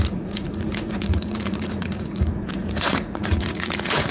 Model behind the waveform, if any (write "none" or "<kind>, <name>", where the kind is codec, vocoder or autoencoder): vocoder, Vocos